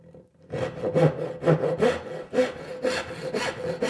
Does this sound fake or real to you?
real